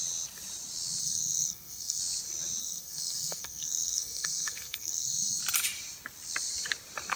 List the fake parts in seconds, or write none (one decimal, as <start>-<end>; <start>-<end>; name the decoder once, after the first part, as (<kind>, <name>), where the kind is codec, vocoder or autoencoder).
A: 1.0-2.0 (codec, SNAC); 2.6-5.4